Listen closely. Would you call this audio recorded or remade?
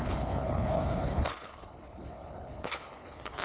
remade